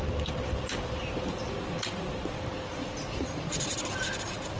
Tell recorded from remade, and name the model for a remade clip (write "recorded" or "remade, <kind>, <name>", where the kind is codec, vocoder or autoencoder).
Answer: recorded